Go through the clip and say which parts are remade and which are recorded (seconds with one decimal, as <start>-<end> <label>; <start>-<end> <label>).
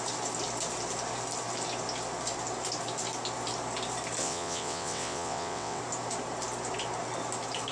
0.0-4.2 recorded; 4.2-5.8 remade; 5.8-7.7 recorded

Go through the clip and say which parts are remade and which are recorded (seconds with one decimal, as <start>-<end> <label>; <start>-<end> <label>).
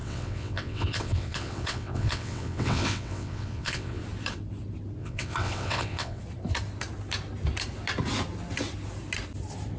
0.0-4.0 remade; 4.0-5.0 recorded; 5.0-6.2 remade; 6.2-9.8 recorded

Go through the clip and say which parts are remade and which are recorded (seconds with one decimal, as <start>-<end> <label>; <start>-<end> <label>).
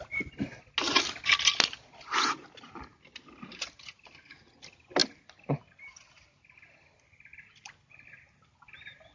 0.0-9.1 recorded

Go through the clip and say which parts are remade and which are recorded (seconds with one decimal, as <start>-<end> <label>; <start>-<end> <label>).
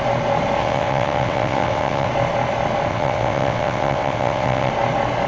0.0-0.6 recorded; 0.6-2.1 remade; 2.1-2.9 recorded; 2.9-4.7 remade; 4.7-5.3 recorded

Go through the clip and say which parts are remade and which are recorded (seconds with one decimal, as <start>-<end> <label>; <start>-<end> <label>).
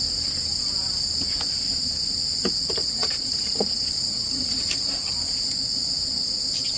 0.0-2.8 recorded; 2.8-3.3 remade; 3.3-4.1 recorded; 4.1-4.6 remade; 4.6-6.8 recorded